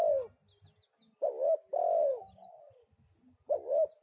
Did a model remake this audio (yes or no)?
no